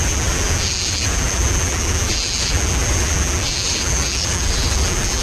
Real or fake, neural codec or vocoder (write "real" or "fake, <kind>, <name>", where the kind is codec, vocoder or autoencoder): fake, vocoder, BigVGAN v2